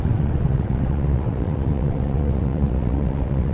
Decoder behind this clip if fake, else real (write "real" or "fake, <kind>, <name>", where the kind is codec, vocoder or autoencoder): fake, vocoder, WaveNeXt